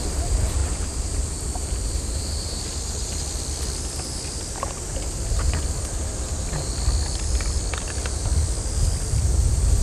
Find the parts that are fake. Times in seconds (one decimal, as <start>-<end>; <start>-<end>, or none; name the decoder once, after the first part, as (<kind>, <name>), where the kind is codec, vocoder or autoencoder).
0.6-2.6 (vocoder, BigVGAN v2)